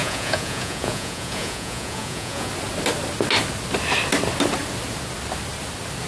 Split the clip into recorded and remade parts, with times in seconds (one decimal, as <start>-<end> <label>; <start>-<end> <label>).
0.0-2.5 remade; 2.5-6.1 recorded